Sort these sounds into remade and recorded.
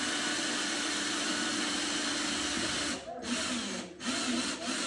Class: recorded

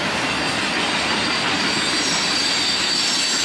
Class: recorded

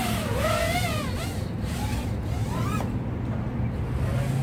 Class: recorded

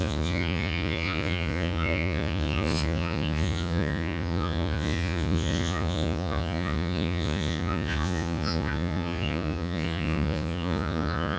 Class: remade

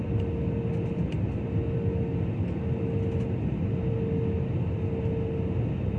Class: recorded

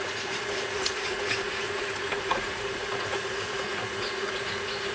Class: remade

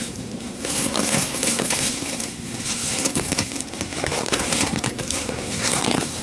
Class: remade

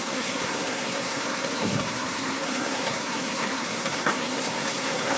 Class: remade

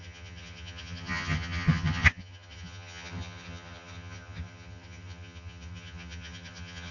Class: remade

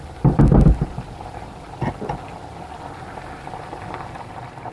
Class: remade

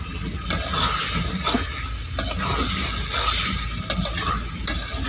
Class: recorded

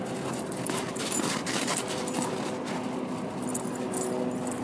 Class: recorded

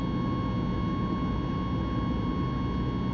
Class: recorded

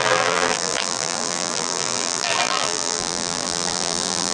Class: remade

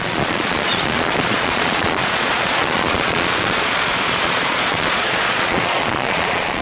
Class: remade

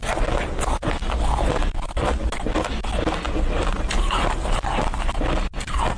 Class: recorded